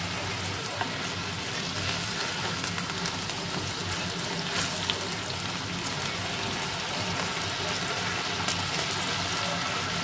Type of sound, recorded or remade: recorded